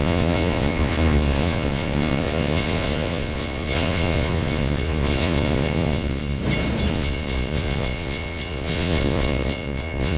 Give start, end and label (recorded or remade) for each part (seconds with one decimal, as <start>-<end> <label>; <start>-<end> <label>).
0.0-6.4 remade; 6.4-6.9 recorded; 6.9-10.2 remade